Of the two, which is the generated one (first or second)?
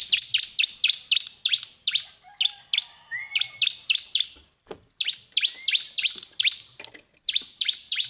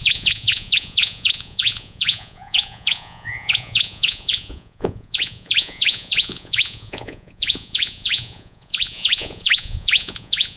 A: second